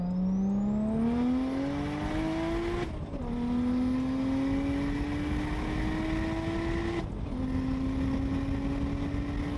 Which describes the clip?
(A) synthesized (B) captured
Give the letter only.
B